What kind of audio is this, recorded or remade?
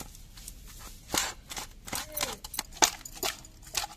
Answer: recorded